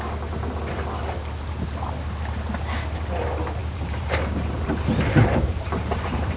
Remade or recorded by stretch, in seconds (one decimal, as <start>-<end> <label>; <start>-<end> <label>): 0.0-3.6 recorded; 3.6-6.4 remade